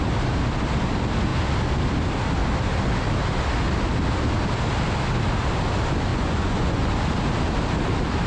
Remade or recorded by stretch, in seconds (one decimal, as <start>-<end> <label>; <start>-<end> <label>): 0.0-6.1 recorded; 6.1-6.9 remade; 6.9-8.3 recorded